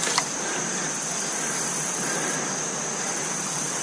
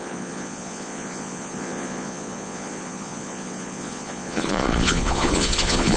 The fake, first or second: second